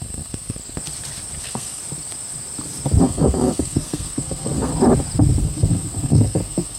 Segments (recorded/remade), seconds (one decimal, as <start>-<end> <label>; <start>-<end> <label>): 0.0-0.6 remade; 0.6-1.4 recorded; 1.4-1.8 remade; 1.8-3.0 recorded; 3.0-4.7 remade; 4.7-5.4 recorded; 5.4-6.8 remade

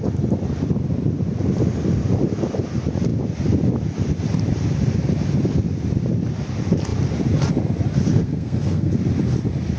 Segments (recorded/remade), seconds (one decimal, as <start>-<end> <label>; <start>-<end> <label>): 0.0-8.2 recorded; 8.2-8.9 remade; 8.9-9.8 recorded

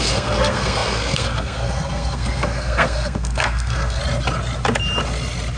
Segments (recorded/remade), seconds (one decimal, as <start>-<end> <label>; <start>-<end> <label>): 0.0-4.0 remade; 4.0-5.6 recorded

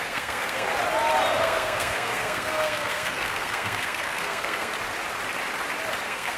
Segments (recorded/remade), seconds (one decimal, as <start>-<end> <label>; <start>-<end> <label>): 0.0-0.7 remade; 0.7-1.4 recorded; 1.4-4.7 remade; 4.7-6.0 recorded; 6.0-6.4 remade

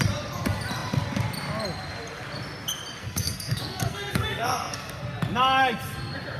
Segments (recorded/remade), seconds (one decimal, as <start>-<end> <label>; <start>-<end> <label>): 0.0-3.0 recorded; 3.0-5.0 remade; 5.0-6.4 recorded

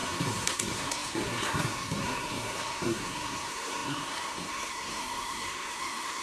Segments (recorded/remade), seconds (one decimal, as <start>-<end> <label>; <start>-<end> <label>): 0.0-6.2 remade

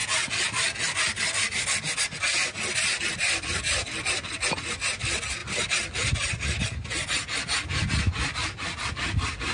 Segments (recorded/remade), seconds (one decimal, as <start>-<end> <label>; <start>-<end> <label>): 0.0-9.5 recorded

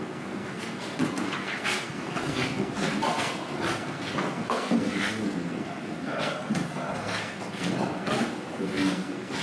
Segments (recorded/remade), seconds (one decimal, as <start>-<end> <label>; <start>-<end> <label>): 0.0-9.4 remade